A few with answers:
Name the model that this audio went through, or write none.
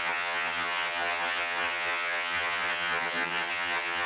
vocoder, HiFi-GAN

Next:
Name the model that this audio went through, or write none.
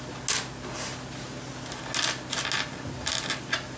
none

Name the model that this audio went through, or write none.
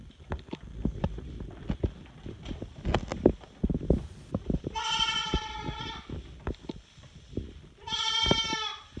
none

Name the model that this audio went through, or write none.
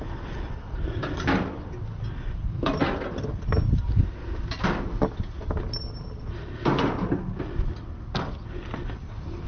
none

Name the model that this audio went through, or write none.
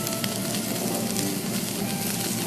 none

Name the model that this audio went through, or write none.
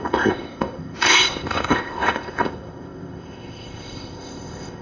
codec, ZipCodec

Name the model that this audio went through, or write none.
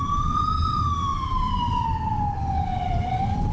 none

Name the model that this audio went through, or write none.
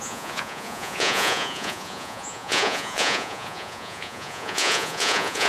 vocoder, Vocos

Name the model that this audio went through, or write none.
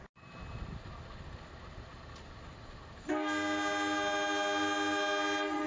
none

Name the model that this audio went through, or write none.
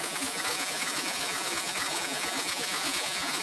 vocoder, Vocos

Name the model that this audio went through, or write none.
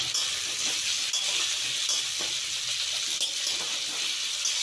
none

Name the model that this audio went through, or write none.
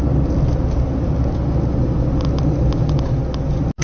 none